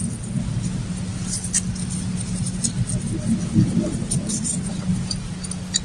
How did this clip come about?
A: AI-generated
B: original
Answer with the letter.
B